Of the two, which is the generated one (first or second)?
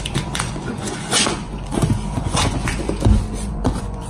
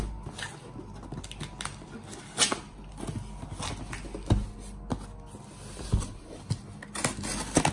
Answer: first